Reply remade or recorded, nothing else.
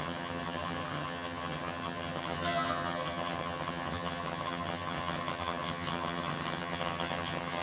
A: remade